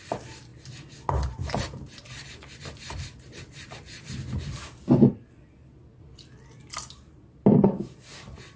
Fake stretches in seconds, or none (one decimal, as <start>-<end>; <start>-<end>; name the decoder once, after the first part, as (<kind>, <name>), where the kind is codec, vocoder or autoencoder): none